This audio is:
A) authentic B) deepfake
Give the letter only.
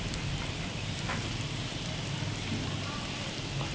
B